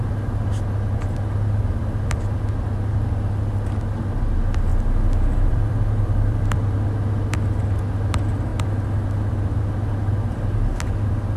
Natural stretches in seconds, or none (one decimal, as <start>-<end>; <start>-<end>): 0.0-4.7; 6.9-8.5; 9.6-11.4